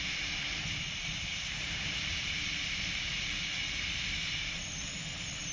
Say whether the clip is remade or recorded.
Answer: remade